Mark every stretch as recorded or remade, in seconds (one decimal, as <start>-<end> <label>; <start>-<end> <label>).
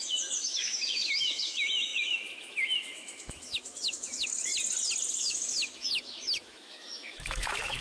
0.0-4.5 remade; 4.5-5.1 recorded; 5.1-7.8 remade